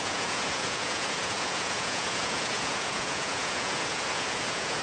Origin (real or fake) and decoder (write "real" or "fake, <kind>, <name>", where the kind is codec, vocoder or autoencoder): fake, vocoder, Vocos